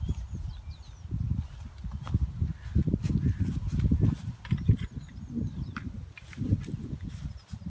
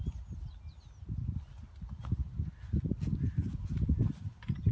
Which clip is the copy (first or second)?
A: first